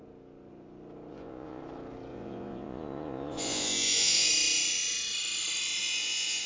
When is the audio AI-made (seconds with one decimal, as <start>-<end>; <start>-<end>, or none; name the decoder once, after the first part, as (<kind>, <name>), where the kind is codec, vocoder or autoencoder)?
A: 1.1-1.6 (vocoder, Vocos); 2.1-4.3; 5.8-6.5